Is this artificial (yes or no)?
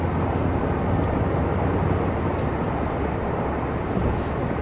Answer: no